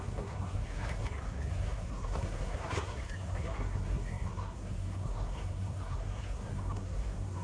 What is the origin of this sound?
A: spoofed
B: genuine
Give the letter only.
A